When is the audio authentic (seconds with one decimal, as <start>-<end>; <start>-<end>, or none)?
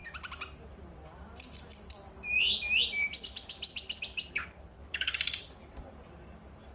0.0-4.8; 5.8-6.7